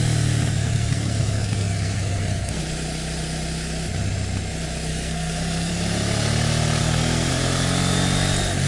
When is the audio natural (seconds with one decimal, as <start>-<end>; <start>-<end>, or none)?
0.0-0.6; 2.6-4.9; 5.7-6.8; 7.3-8.7